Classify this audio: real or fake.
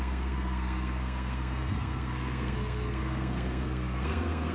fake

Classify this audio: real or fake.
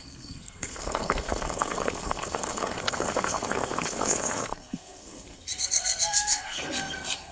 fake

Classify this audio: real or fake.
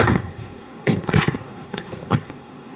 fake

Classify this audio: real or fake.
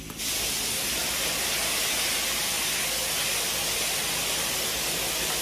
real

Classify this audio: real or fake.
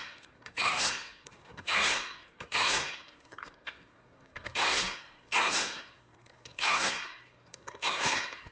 fake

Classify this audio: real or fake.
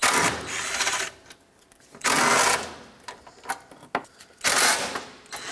real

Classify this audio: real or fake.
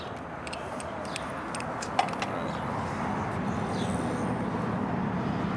real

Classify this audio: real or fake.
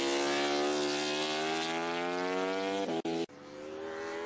real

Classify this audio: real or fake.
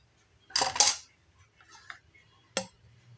real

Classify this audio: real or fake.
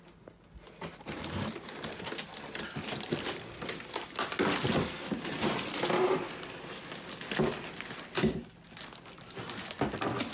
real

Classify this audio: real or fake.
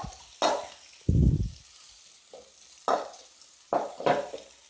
real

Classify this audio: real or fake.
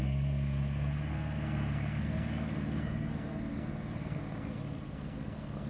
fake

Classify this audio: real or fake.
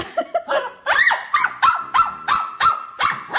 real